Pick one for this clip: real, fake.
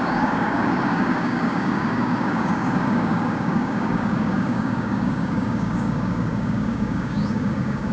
fake